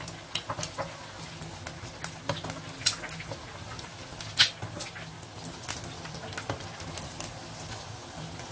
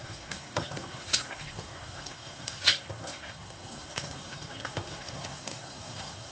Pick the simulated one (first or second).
second